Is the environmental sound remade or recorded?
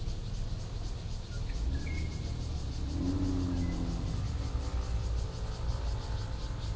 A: recorded